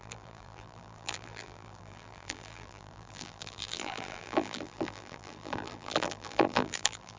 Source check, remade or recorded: remade